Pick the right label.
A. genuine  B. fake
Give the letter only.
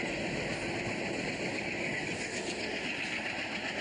A